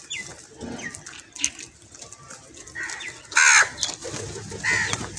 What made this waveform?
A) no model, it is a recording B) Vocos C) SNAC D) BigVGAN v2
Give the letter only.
A